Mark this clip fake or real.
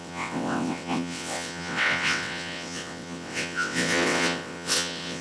fake